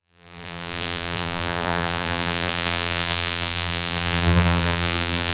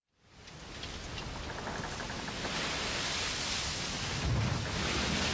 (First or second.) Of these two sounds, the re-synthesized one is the first